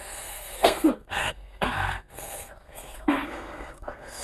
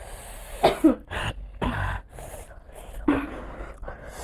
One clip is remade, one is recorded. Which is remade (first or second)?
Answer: first